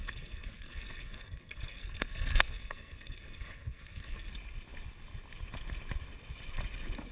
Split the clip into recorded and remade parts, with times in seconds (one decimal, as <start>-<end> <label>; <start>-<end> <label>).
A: 0.0-4.3 remade; 4.3-7.1 recorded